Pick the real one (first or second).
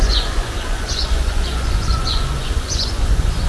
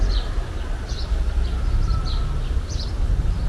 second